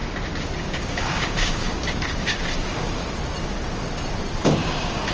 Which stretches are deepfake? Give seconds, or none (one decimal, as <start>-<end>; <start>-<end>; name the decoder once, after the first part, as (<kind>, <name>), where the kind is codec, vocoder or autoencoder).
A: 0.6-3.0 (codec, DAC); 4.4-5.1